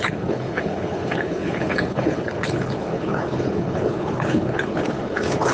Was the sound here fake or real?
fake